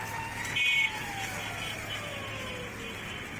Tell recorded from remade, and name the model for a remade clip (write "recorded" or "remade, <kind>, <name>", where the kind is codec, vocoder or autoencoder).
recorded